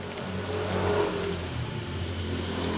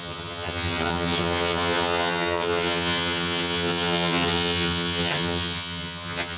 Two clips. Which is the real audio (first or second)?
first